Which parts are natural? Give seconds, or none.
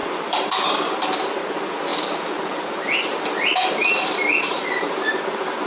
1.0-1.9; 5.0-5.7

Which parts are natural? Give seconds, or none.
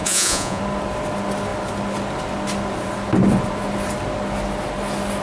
0.6-5.2